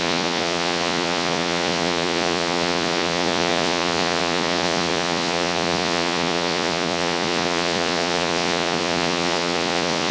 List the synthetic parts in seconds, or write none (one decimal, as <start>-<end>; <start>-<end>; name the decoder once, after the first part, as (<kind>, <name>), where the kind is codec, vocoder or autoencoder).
0.0-10.1 (vocoder, Vocos)